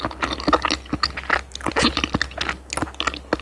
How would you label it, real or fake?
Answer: real